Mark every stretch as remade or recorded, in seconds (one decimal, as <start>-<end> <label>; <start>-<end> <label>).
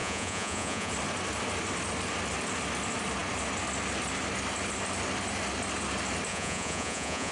0.0-0.9 remade; 0.9-6.3 recorded; 6.3-7.3 remade